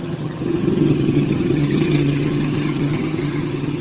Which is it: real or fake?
fake